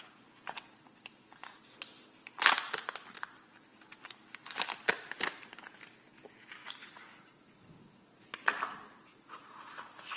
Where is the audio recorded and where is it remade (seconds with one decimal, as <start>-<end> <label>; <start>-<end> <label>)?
0.0-6.6 recorded; 6.6-8.2 remade; 8.2-9.1 recorded; 9.1-9.6 remade; 9.6-10.2 recorded